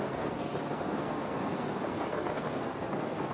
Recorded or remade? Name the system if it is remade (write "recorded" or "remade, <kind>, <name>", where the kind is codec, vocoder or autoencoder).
remade, codec, SNAC